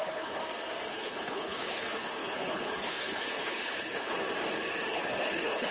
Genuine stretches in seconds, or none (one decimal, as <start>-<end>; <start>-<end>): 0.4-0.9; 4.2-4.9